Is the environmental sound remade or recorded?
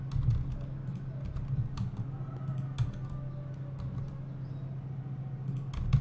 recorded